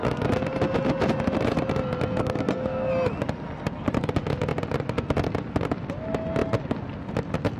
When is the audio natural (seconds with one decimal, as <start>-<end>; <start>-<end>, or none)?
0.0-2.2; 2.9-7.6

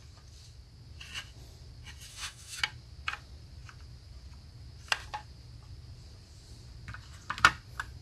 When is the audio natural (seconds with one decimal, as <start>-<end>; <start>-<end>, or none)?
0.0-2.1; 2.6-8.0

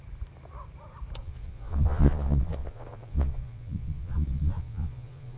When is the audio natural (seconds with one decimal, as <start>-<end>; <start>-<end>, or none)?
0.0-1.2

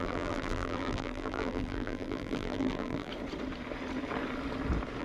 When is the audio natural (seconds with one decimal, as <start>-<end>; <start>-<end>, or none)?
3.1-5.0

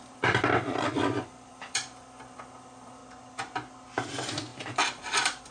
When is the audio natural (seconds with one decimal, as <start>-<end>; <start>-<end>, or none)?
3.0-4.1

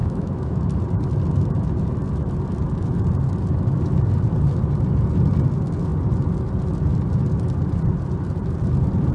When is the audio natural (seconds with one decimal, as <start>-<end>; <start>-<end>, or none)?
0.6-9.1

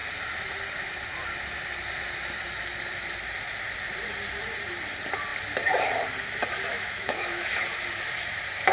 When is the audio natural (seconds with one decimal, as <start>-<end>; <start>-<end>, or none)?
0.0-6.7; 7.6-8.7

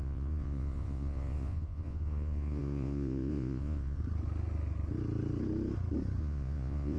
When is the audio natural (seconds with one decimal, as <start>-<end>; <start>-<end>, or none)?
4.0-6.2